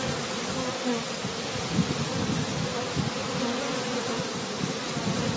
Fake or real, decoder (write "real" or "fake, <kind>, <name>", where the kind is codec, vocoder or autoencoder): real